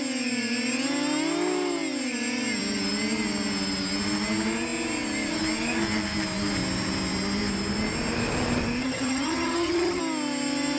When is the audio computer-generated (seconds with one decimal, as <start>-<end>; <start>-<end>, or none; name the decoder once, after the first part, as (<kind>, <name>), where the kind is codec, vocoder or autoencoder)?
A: 8.8-10.0 (vocoder, HiFi-GAN)